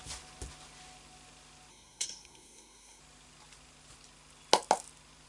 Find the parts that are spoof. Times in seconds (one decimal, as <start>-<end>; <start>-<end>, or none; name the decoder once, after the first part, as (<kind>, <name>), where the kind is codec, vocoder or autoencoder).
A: 1.7-3.0 (codec, SNAC)